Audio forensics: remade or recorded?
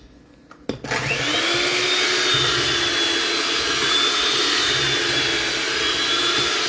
recorded